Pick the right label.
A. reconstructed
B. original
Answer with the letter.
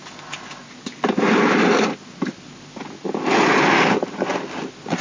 B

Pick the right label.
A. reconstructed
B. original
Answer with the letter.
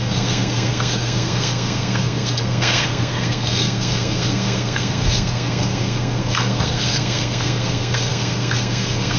A